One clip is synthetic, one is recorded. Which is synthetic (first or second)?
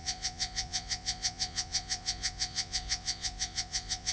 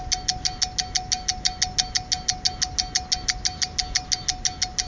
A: first